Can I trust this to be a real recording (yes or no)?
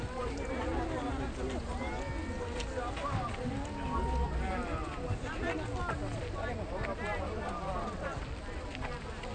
yes